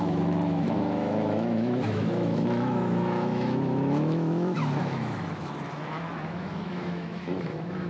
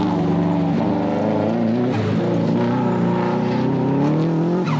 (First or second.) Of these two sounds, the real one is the second